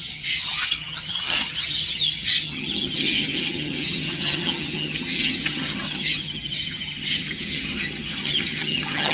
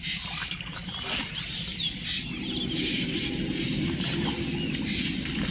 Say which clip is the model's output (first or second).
first